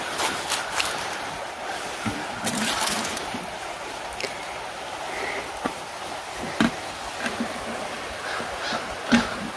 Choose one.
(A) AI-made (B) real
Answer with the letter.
B